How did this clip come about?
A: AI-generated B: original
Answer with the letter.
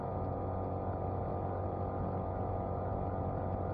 B